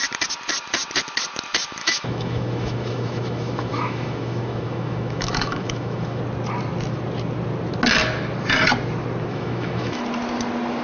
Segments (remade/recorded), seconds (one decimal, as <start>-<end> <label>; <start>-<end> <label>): 0.0-1.8 recorded; 1.8-6.2 remade; 6.2-9.3 recorded; 9.3-10.0 remade; 10.0-10.8 recorded